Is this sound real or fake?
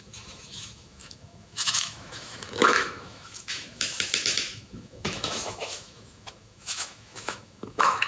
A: fake